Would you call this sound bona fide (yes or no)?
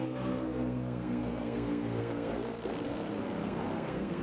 no